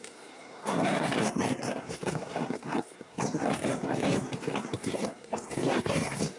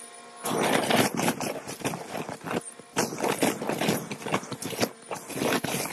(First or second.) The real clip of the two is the second